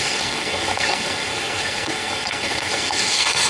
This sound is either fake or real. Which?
fake